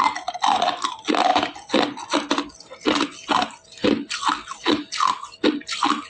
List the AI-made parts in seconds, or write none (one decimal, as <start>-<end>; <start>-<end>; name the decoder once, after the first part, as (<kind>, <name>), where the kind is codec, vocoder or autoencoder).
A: 0.0-1.3 (vocoder, BigVGAN v2); 5.0-6.1